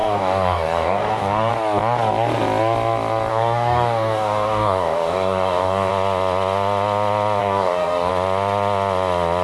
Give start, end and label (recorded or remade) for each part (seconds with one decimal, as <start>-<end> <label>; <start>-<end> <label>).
0.0-1.5 remade; 1.5-3.3 recorded; 3.3-5.9 remade; 5.9-7.4 recorded; 7.4-8.1 remade; 8.1-9.4 recorded